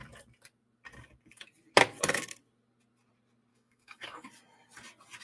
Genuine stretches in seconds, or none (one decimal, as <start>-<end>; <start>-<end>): 0.0-3.5; 4.3-5.2